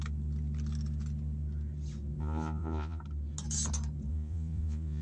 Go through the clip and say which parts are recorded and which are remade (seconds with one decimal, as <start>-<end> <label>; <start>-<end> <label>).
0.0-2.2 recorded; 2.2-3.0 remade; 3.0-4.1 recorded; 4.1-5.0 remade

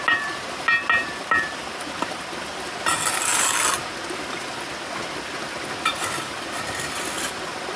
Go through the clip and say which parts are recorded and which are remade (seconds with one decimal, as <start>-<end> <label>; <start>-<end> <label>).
0.0-1.0 recorded; 1.0-2.9 remade; 2.9-3.3 recorded; 3.3-5.2 remade; 5.2-5.9 recorded; 5.9-6.9 remade; 6.9-7.8 recorded

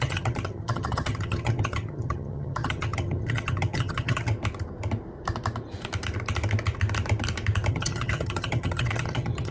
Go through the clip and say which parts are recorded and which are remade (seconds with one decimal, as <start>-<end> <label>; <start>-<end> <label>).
0.0-4.3 remade; 4.3-7.7 recorded; 7.7-9.5 remade

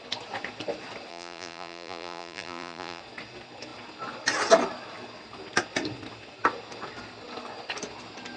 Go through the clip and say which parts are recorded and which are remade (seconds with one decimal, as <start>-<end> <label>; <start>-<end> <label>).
0.0-1.1 recorded; 1.1-3.0 remade; 3.0-8.4 recorded

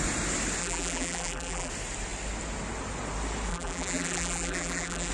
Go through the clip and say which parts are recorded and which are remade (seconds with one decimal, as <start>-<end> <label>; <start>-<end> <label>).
0.0-0.6 recorded; 0.6-1.7 remade; 1.7-3.5 recorded; 3.5-5.1 remade

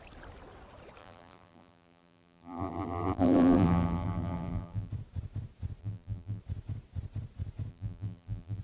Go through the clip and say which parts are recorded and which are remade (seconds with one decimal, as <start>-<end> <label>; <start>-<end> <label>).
0.0-1.0 recorded; 1.0-4.9 remade; 4.9-5.8 recorded; 5.8-6.4 remade; 6.4-7.7 recorded; 7.7-8.6 remade